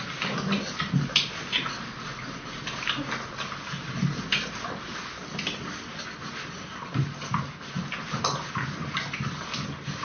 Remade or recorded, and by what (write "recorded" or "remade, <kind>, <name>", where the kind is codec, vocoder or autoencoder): recorded